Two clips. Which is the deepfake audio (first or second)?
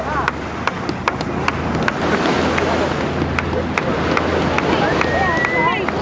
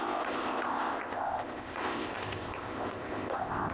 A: second